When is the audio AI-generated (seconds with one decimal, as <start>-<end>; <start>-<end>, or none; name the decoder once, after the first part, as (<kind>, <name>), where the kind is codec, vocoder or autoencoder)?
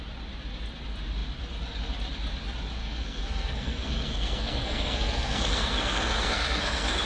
2.8-7.1 (codec, SNAC)